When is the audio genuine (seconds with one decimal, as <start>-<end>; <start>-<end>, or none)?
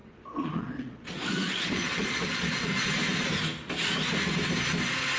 2.7-5.2